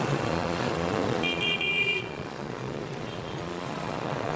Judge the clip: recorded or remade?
remade